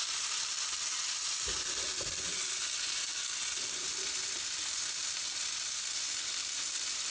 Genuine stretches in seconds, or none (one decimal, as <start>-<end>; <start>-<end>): 0.0-7.1